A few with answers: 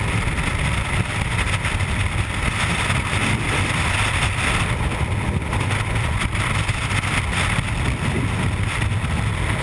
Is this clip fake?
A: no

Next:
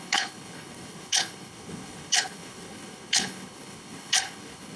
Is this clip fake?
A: yes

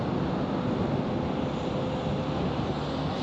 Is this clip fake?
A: no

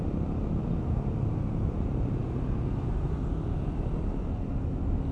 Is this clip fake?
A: no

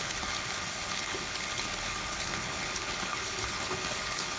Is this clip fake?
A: yes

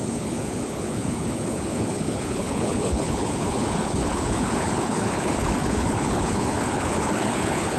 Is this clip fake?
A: yes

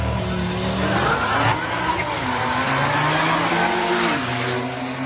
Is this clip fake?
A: no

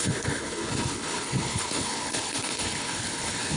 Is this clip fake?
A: yes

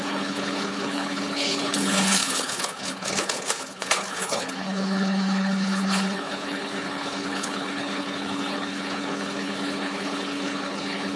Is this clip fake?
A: yes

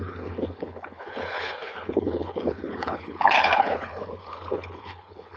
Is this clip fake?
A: yes